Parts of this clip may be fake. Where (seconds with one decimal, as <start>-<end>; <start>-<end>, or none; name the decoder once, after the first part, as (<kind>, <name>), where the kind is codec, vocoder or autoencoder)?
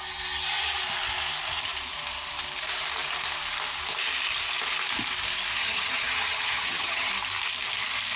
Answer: 5.6-7.1 (vocoder, HiFi-GAN)